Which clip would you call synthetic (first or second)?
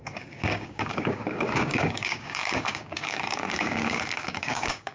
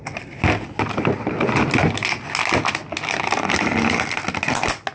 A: first